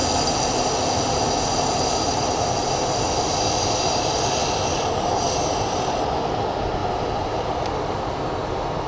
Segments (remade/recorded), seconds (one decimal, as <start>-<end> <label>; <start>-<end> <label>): 0.0-6.8 recorded; 6.8-7.5 remade; 7.5-8.9 recorded